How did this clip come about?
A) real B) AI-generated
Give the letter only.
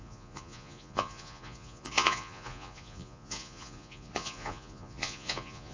B